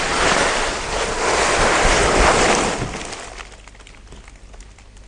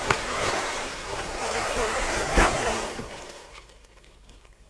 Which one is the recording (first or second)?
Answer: first